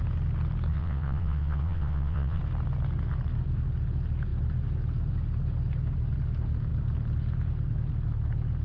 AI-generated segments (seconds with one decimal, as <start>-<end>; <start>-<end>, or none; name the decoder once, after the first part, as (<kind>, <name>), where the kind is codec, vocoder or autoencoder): 0.7-2.4 (vocoder, WaveNeXt)